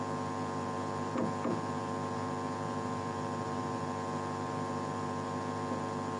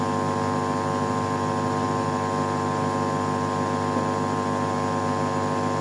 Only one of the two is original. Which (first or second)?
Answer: second